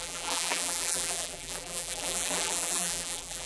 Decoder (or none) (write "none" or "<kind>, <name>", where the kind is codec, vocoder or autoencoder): vocoder, BigVGAN v2